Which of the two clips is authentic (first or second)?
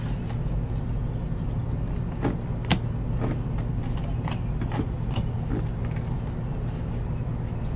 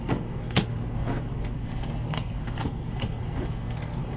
first